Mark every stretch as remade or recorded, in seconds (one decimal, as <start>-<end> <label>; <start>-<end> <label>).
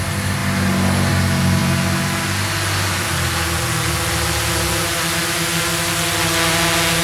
0.0-7.0 recorded